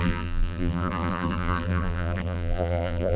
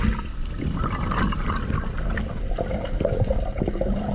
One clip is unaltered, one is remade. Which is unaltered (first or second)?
second